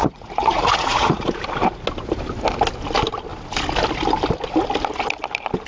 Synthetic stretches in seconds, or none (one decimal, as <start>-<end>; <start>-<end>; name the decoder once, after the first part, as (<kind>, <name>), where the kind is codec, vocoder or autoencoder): 0.0-1.4 (vocoder, Vocos)